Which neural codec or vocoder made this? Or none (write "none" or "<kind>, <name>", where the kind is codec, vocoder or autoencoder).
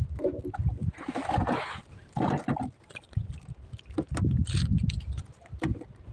none